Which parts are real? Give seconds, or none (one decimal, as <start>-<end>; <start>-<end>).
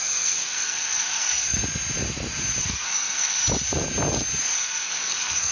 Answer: 1.6-2.6; 3.4-4.4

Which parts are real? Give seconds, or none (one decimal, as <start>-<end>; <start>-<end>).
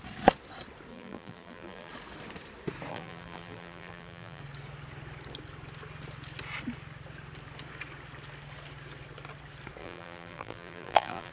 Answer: 0.0-0.9; 1.9-2.9; 4.4-9.8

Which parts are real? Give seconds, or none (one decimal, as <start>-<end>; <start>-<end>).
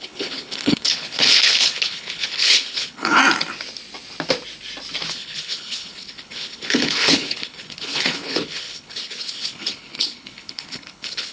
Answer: 3.2-5.1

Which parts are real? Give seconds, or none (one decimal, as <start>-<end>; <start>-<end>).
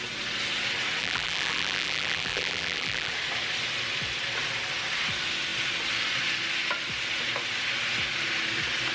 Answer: 0.0-1.0; 3.1-8.9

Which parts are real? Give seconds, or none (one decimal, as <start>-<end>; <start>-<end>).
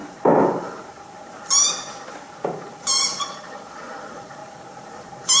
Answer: 0.0-3.2; 4.4-5.4